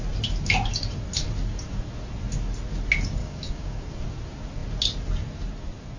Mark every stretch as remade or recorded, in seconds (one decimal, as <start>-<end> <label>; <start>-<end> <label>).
0.0-3.2 recorded; 3.2-3.8 remade; 3.8-6.0 recorded